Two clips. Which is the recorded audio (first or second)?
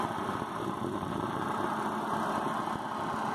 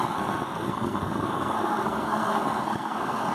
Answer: first